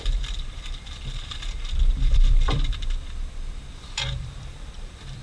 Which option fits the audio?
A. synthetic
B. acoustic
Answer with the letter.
A